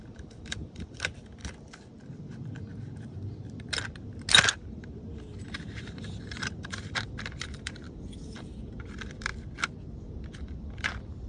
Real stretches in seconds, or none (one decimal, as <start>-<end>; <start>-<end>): 1.4-5.4; 9.3-10.0